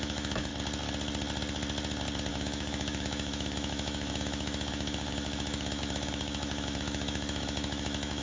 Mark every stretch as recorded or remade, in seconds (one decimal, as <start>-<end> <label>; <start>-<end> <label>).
0.0-0.5 remade; 0.5-2.3 recorded; 2.3-8.2 remade